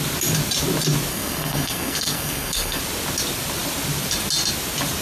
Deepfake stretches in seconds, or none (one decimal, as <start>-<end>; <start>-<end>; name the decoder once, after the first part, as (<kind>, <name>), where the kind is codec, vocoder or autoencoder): 1.1-2.8 (codec, SNAC)